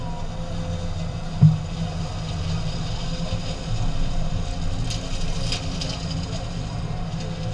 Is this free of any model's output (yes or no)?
yes